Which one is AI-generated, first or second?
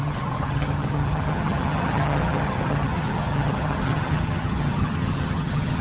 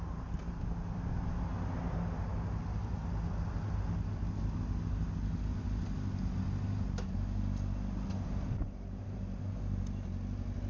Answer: first